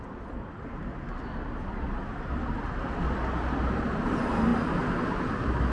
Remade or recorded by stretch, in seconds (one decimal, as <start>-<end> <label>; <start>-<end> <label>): 0.0-5.7 recorded